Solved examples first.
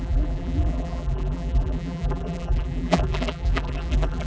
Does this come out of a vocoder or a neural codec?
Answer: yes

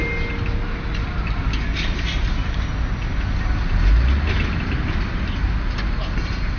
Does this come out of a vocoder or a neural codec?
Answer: no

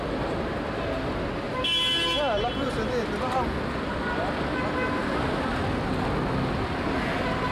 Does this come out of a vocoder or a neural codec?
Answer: no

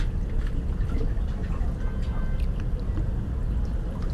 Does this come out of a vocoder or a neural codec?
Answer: no